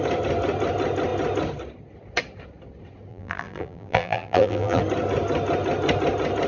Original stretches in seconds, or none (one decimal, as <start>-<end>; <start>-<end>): 0.0-3.1; 4.8-6.5